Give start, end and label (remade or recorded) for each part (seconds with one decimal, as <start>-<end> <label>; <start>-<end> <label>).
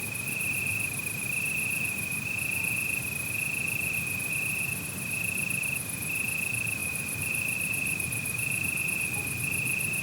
0.0-6.8 recorded; 6.8-8.8 remade; 8.8-10.0 recorded